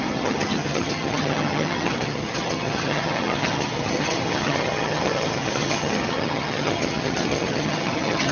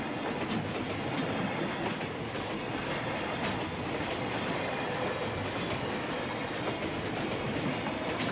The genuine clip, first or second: second